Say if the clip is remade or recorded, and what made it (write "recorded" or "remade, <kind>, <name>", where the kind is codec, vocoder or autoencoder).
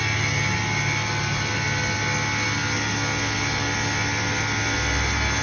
recorded